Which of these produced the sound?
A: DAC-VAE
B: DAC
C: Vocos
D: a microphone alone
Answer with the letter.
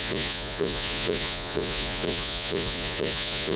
C